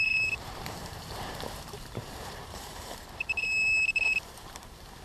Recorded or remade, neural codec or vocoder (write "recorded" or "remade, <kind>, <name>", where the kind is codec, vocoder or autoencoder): remade, vocoder, BigVGAN v2